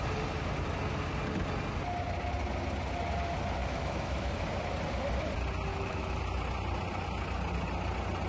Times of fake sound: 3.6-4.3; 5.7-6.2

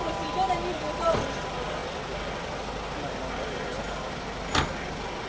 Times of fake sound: none

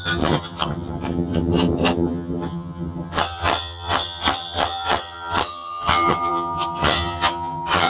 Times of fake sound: 0.0-7.9